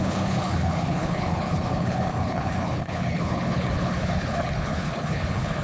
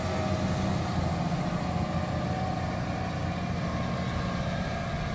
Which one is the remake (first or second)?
first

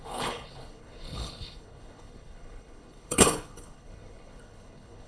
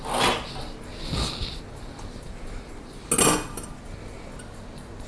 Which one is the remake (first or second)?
first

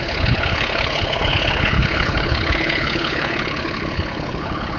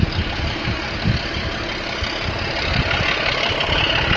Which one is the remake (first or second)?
first